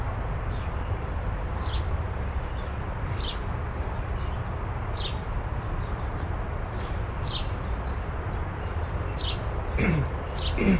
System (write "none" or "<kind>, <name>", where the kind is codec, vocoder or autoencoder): none